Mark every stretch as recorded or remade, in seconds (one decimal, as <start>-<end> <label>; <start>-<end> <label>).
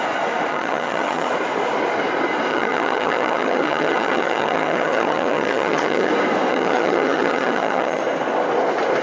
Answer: 0.0-0.5 recorded; 0.5-1.3 remade; 1.3-2.5 recorded; 2.5-6.1 remade; 6.1-6.5 recorded; 6.5-8.0 remade; 8.0-9.0 recorded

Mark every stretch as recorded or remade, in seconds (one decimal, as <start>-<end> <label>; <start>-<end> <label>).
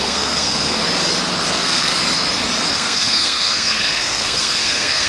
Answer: 0.0-0.8 remade; 0.8-1.5 recorded; 1.5-1.9 remade; 1.9-2.7 recorded; 2.7-5.1 remade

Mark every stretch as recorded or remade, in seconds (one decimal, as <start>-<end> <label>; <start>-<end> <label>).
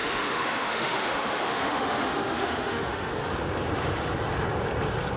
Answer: 0.0-3.1 remade; 3.1-5.2 recorded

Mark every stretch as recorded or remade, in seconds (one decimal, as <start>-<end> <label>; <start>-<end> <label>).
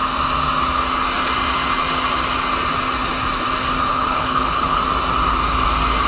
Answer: 0.0-3.9 recorded; 3.9-4.8 remade; 4.8-6.1 recorded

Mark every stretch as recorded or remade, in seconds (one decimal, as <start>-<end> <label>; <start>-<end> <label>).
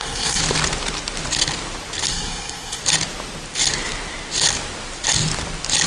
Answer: 0.0-0.4 remade; 0.4-2.1 recorded; 2.1-2.8 remade; 2.8-5.9 recorded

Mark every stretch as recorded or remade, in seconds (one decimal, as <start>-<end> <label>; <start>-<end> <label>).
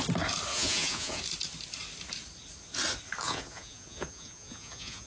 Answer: 0.0-0.5 recorded; 0.5-1.2 remade; 1.2-3.2 recorded; 3.2-5.1 remade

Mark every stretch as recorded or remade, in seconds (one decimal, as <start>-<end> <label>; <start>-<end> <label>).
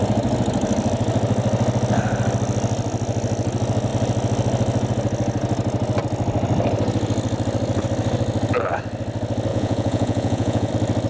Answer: 0.0-9.5 recorded; 9.5-10.7 remade; 10.7-11.1 recorded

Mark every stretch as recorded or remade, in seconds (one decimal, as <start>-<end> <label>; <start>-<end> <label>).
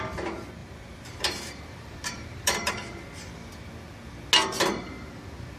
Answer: 0.0-0.6 recorded; 0.6-2.7 remade; 2.7-5.6 recorded